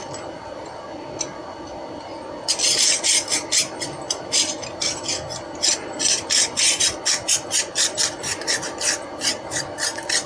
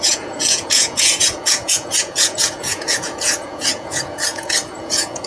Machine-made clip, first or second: second